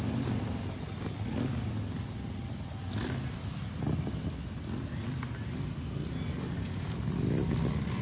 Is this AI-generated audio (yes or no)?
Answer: no